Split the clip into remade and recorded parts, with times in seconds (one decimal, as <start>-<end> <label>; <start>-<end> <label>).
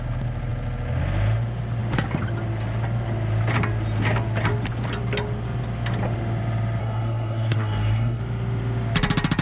0.0-6.8 recorded; 6.8-8.2 remade; 8.2-9.4 recorded